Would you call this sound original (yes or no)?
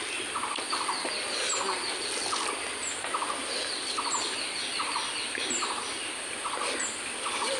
yes